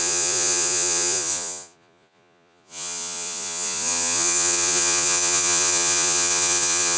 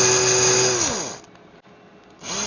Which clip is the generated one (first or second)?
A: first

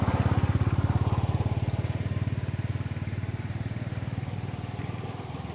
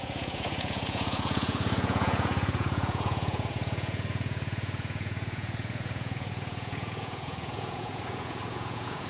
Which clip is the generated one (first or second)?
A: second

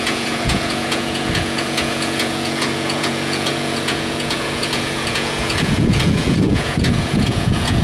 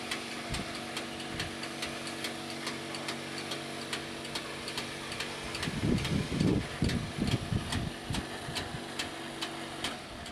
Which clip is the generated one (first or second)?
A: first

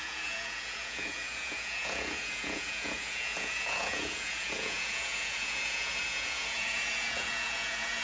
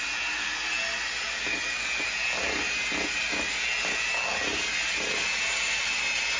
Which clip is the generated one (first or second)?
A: first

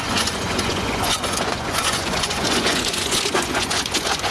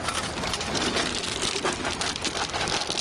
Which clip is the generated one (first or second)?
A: first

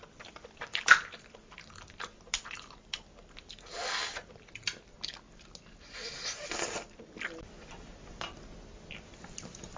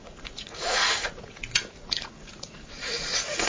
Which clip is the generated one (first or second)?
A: second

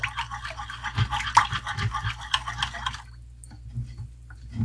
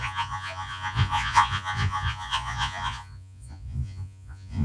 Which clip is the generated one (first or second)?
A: second